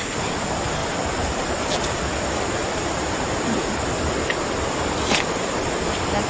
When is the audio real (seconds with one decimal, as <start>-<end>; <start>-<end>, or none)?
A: 0.0-2.6; 3.3-6.3